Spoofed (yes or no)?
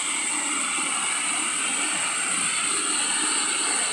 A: no